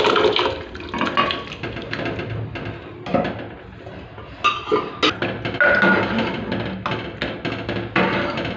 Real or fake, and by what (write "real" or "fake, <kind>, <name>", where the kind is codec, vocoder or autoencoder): real